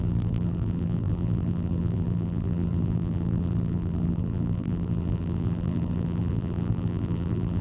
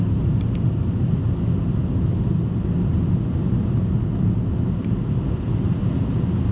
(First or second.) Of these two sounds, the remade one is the first